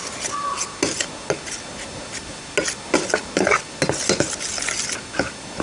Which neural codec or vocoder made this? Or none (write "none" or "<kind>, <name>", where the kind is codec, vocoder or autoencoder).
none